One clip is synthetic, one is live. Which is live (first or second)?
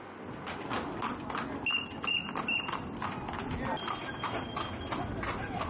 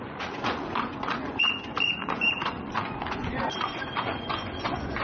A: first